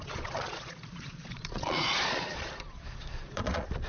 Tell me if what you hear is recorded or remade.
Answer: remade